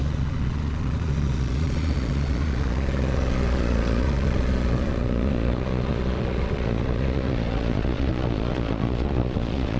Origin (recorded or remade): remade